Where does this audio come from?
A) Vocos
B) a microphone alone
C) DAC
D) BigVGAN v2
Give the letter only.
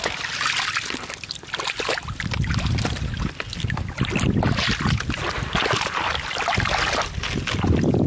B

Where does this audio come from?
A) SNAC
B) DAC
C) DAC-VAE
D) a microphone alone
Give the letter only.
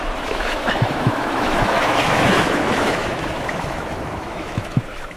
C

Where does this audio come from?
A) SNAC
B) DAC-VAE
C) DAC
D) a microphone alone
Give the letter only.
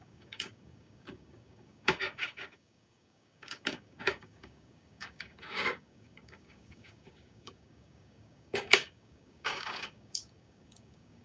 C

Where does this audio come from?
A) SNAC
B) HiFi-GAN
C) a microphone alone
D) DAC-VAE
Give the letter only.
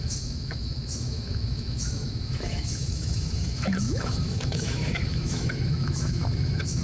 D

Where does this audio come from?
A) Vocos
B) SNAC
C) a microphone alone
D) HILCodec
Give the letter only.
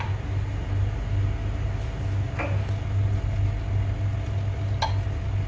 C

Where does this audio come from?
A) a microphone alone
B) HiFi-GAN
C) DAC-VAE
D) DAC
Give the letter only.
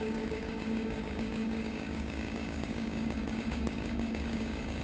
D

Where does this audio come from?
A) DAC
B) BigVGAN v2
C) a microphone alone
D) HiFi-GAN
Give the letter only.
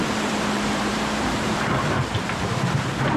B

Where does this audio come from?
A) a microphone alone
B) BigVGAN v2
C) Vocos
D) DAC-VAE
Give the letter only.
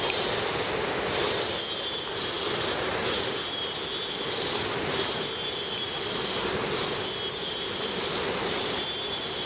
A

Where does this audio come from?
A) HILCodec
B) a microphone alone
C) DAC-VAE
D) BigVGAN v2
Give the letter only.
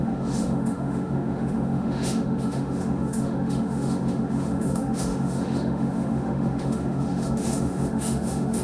C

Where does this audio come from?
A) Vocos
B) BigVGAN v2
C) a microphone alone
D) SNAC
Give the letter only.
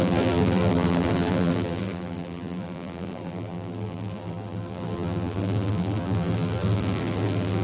B